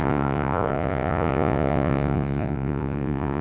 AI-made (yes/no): yes